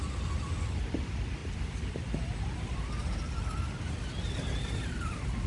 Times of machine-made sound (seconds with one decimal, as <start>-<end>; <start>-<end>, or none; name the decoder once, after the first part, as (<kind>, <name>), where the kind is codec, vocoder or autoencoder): 1.4-1.9 (vocoder, BigVGAN v2)